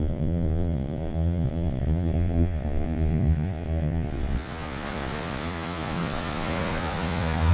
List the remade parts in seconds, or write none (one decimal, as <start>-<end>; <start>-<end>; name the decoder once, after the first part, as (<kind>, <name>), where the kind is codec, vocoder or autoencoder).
0.0-7.5 (vocoder, Vocos)